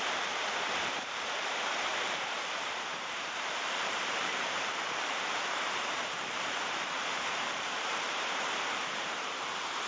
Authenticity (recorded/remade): remade